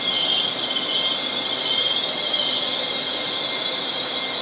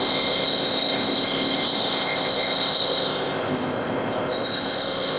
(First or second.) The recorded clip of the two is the first